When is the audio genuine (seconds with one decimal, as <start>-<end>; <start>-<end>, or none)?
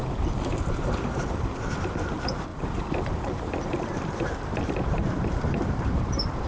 0.0-2.5